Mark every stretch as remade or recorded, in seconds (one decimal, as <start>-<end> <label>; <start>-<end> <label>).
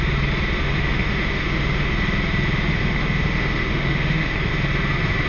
0.0-0.6 recorded; 0.6-1.9 remade; 1.9-2.7 recorded; 2.7-4.5 remade; 4.5-5.3 recorded